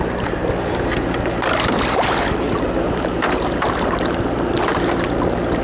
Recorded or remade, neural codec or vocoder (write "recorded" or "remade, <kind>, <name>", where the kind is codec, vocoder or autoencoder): recorded